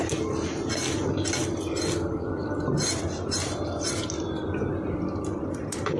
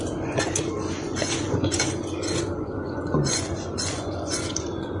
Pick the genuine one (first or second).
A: first